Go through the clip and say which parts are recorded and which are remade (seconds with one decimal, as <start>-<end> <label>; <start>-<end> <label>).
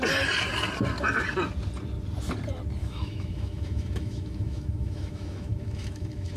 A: 0.0-2.8 recorded; 2.8-6.4 remade